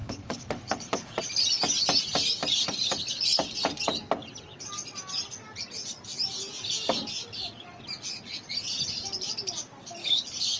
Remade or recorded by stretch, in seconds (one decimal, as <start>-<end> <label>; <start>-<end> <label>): 0.0-1.2 remade; 1.2-10.0 recorded; 10.0-10.6 remade